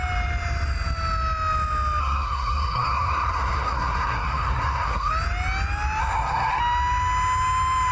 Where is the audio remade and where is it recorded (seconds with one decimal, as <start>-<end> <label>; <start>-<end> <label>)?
0.0-2.0 recorded; 2.0-5.1 remade; 5.1-6.0 recorded; 6.0-6.6 remade; 6.6-7.9 recorded